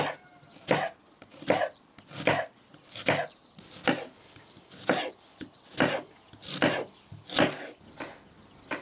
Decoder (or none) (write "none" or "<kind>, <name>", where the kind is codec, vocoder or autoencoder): none